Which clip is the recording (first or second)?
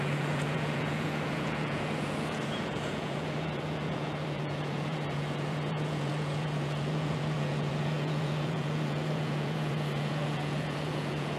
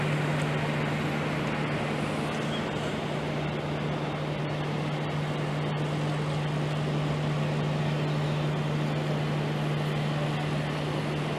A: second